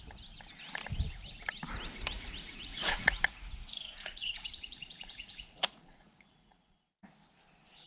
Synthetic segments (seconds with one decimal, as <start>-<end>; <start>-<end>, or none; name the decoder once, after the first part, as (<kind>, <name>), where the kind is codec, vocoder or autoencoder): 2.1-6.8 (vocoder, Vocos)